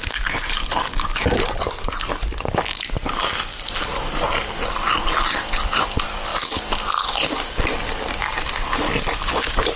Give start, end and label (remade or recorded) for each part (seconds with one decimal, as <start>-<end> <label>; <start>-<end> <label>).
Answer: 0.0-9.8 recorded